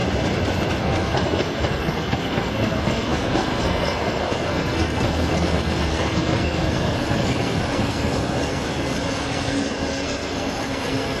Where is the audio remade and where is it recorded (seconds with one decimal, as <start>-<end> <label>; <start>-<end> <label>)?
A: 0.0-0.8 recorded; 0.8-11.2 remade